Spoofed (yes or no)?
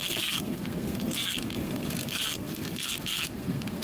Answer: yes